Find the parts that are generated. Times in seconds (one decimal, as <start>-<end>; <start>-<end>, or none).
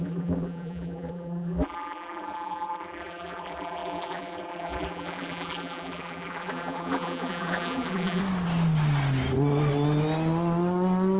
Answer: 0.0-8.2